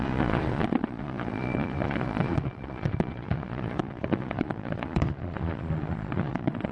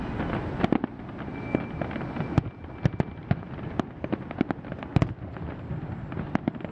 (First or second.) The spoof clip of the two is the first